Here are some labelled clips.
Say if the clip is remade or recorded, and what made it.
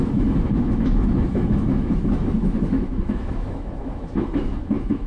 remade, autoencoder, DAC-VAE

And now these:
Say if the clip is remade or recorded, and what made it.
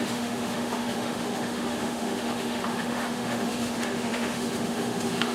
remade, autoencoder, DAC-VAE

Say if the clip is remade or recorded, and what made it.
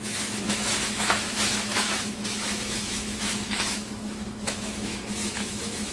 remade, autoencoder, DAC-VAE